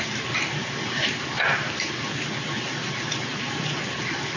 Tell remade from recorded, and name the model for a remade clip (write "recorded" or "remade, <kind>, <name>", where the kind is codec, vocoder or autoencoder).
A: recorded